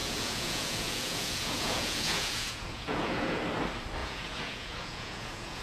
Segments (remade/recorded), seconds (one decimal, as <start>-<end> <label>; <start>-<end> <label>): 0.0-3.4 remade; 3.4-4.0 recorded; 4.0-5.6 remade

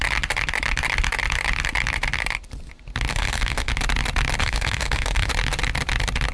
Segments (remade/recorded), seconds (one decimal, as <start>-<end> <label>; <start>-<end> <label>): 0.0-3.1 recorded; 3.1-3.7 remade; 3.7-4.4 recorded; 4.4-5.3 remade; 5.3-6.3 recorded

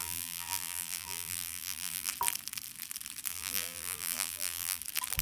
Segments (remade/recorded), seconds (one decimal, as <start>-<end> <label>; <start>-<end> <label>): 0.0-2.1 remade; 2.1-3.3 recorded; 3.3-4.8 remade; 4.8-5.2 recorded

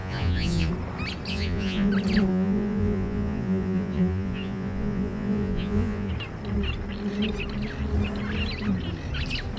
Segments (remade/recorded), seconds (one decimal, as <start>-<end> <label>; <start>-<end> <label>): 0.0-0.7 remade; 0.7-1.3 recorded; 1.3-1.9 remade; 1.9-2.3 recorded; 2.3-6.1 remade; 6.1-9.6 recorded

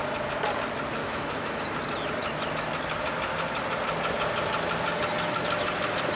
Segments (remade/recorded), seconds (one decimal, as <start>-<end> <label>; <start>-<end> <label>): 0.0-1.0 recorded; 1.0-1.6 remade; 1.6-6.2 recorded

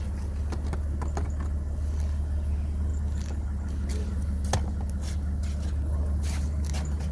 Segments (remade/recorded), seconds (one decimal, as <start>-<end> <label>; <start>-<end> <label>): 0.0-7.1 recorded

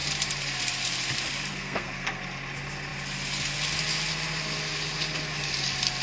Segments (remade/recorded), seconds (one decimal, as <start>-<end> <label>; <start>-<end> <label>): 0.0-1.5 recorded; 1.5-2.2 remade; 2.2-6.0 recorded